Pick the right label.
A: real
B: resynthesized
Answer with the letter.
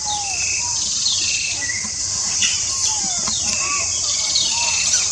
A